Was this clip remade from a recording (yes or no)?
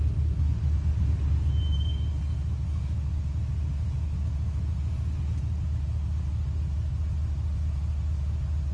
no